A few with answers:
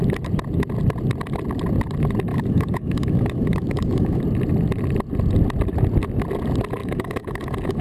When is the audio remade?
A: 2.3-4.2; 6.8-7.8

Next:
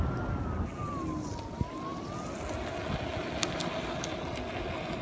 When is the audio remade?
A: none

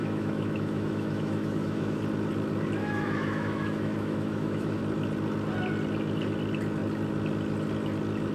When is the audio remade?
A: 0.0-2.0; 2.8-4.8